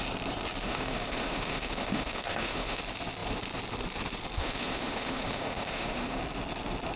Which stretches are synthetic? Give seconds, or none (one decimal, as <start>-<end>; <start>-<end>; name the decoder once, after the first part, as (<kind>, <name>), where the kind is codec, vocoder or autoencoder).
0.6-2.8 (autoencoder, DAC-VAE); 4.4-6.2